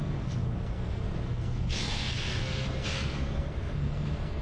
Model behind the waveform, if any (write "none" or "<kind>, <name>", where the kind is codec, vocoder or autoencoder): codec, SNAC